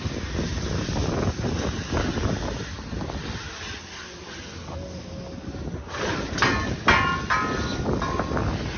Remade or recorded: recorded